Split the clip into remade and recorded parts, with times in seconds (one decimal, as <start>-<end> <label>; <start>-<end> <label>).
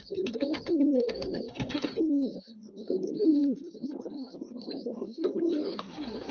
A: 0.0-6.3 remade